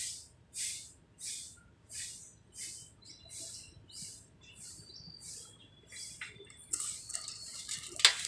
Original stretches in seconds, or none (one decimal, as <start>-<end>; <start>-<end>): 0.0-5.6; 6.7-8.3